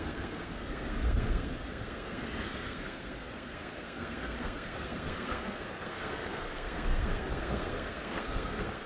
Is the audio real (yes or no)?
no